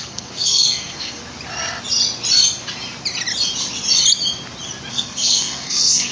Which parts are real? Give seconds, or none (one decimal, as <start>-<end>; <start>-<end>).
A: 1.2-4.9